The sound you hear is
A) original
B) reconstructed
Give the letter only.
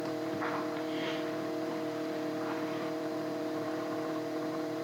B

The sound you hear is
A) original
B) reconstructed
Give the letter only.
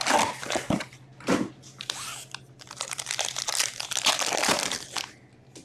A